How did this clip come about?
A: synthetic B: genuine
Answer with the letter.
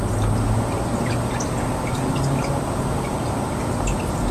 B